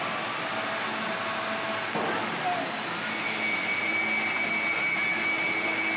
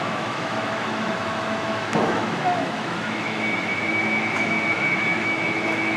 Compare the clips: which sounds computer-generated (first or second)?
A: second